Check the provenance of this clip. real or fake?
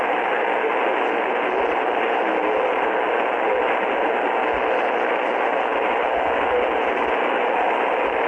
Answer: real